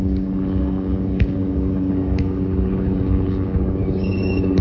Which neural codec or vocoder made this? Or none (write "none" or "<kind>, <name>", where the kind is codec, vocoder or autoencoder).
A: codec, DAC